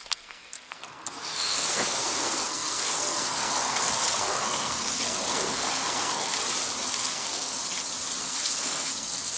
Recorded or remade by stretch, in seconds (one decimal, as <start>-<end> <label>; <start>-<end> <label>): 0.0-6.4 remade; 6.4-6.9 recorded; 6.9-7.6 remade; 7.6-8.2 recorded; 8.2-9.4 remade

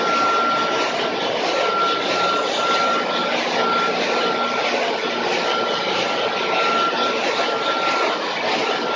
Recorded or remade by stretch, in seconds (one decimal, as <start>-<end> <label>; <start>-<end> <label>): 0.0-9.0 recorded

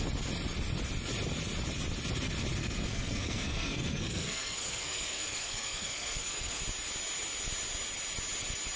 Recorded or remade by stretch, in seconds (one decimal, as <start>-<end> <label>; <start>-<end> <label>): 0.0-2.6 recorded; 2.6-6.6 remade; 6.6-8.8 recorded

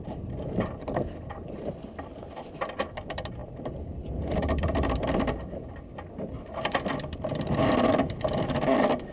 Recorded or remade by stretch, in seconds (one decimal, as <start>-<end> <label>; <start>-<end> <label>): 0.0-9.1 recorded

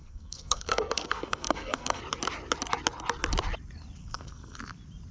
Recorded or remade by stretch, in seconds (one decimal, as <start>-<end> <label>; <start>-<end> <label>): 0.0-2.0 remade; 2.0-4.0 recorded; 4.0-4.6 remade; 4.6-5.1 recorded